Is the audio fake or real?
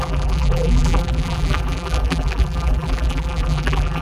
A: fake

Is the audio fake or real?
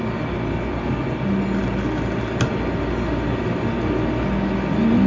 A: real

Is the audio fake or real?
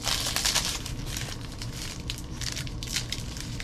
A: fake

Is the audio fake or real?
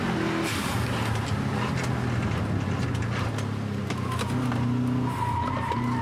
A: real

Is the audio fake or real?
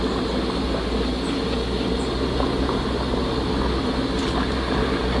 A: real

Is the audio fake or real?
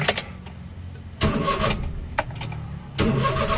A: real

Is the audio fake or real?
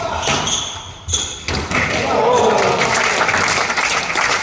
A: fake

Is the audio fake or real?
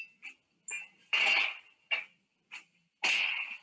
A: real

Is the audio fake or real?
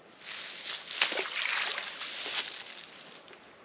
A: real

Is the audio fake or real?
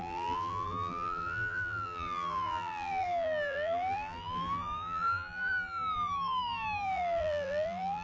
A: fake